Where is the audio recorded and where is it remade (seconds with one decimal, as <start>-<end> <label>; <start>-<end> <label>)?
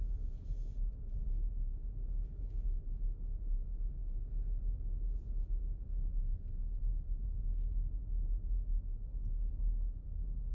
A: 0.0-10.5 recorded